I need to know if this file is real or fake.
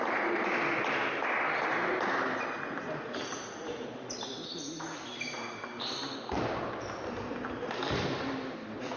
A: real